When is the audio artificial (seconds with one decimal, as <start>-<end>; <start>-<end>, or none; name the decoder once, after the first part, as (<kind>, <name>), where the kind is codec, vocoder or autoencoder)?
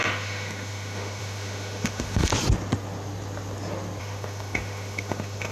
0.0-2.3 (autoencoder, DAC-VAE); 4.0-5.5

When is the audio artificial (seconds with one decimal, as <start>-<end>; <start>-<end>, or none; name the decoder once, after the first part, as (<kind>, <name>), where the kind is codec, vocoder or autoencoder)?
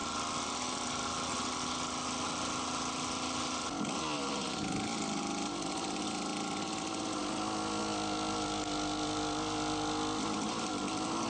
none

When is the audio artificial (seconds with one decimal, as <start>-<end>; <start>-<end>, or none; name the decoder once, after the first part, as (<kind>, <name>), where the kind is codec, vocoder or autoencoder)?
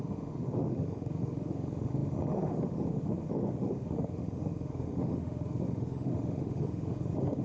0.0-7.4 (autoencoder, DAC-VAE)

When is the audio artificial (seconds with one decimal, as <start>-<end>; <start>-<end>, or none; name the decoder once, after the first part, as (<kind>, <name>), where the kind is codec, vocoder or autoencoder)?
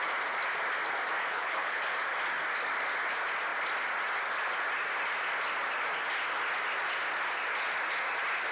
1.2-1.8 (codec, HILCodec)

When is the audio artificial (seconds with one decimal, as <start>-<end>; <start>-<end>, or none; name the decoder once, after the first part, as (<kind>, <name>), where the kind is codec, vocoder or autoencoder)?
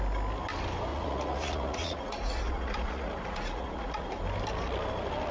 0.9-4.1 (vocoder, Vocos)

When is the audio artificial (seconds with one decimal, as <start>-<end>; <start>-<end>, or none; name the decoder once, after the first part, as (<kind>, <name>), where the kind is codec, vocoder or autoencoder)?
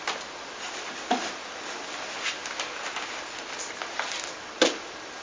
none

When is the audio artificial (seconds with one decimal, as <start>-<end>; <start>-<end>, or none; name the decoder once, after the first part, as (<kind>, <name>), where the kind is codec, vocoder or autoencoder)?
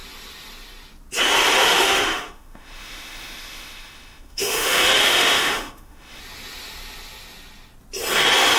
1.6-6.2 (autoencoder, DAC-VAE)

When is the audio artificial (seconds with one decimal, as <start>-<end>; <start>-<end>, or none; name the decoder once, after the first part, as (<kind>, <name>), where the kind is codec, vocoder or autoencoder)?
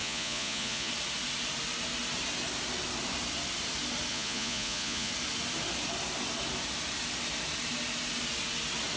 0.0-0.9 (vocoder, Vocos); 4.1-5.1